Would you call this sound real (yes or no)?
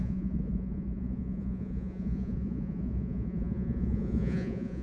no